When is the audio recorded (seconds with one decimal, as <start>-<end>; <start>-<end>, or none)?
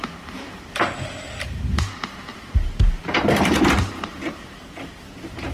2.3-3.2